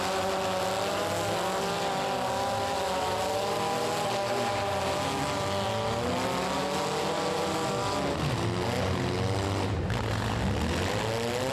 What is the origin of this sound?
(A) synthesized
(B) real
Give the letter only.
B